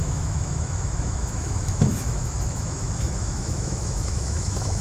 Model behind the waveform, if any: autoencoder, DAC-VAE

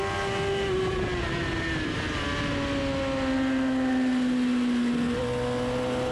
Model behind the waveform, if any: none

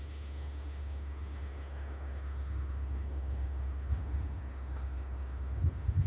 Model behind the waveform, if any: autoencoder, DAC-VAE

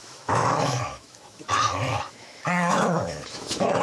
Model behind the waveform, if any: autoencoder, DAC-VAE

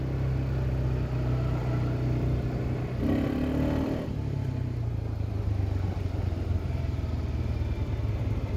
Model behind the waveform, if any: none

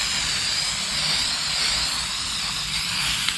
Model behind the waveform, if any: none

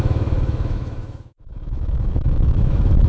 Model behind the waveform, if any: autoencoder, DAC-VAE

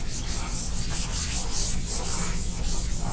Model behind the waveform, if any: none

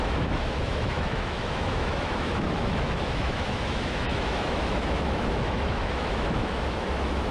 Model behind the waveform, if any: autoencoder, DAC-VAE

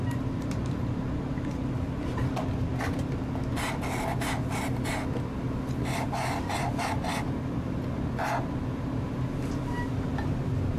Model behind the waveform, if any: none